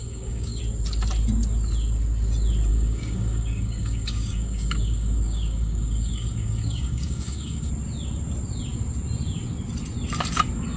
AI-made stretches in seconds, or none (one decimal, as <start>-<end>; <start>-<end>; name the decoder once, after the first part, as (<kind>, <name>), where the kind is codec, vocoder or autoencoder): 0.0-0.6 (codec, DAC); 2.7-7.7